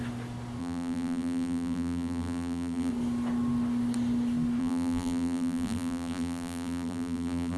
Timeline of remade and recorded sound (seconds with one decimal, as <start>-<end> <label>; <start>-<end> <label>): 0.0-0.6 recorded; 0.6-2.9 remade; 2.9-4.6 recorded; 4.6-7.6 remade